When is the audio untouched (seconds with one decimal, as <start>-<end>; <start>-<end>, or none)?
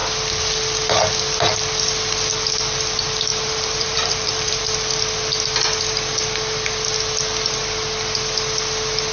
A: 0.0-3.3; 4.6-9.1